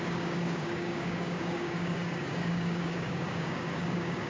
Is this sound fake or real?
fake